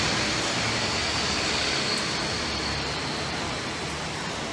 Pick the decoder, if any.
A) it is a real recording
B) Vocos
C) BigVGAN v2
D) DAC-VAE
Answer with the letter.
A